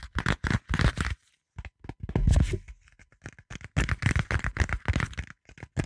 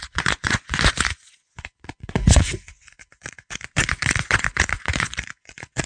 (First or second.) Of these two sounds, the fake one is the second